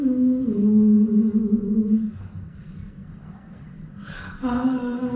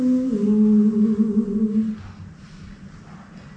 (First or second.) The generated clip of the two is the first